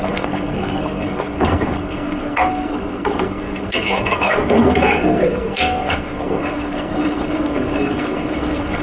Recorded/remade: remade